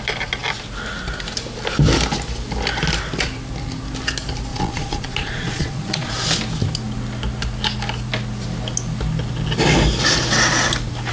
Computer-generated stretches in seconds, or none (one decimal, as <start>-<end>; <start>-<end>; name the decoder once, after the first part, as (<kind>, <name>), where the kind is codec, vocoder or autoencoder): 4.5-6.1 (vocoder, Vocos)